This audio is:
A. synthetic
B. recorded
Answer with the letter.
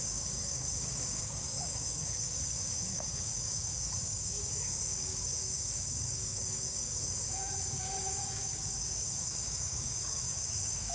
A